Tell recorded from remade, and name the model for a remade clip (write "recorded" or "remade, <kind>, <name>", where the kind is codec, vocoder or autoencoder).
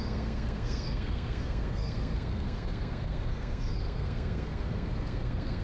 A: remade, codec, SNAC